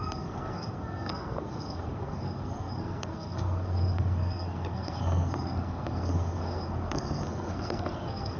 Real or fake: fake